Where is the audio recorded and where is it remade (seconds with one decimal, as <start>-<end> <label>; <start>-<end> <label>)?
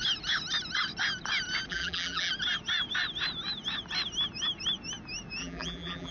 0.0-1.7 recorded; 1.7-2.3 remade; 2.3-5.4 recorded; 5.4-6.1 remade